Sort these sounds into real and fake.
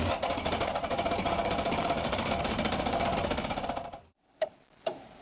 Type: fake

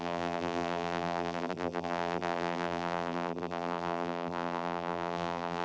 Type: fake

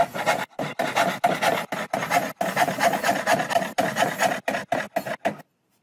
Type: real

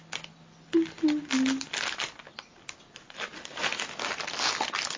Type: real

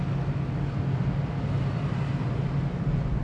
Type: real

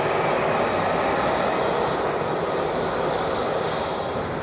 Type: real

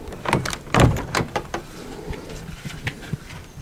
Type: fake